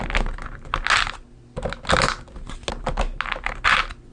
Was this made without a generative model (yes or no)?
yes